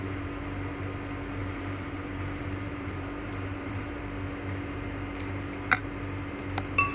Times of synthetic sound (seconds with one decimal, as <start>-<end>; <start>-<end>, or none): 1.4-4.0